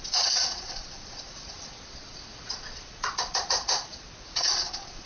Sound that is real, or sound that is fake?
fake